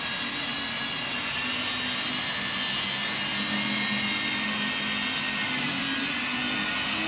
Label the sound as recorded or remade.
recorded